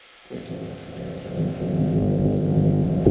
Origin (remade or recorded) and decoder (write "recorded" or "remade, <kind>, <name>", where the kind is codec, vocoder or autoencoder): remade, codec, ZipCodec